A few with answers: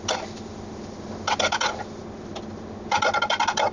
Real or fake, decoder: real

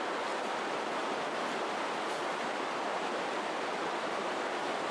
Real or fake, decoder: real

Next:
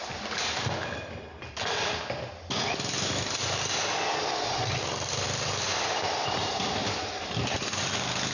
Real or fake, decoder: real